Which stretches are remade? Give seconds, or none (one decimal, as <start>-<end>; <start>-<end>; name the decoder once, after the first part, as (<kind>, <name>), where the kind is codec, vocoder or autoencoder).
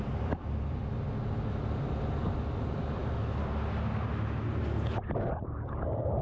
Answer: 0.0-0.8 (vocoder, BigVGAN v2); 2.6-3.0; 4.6-6.2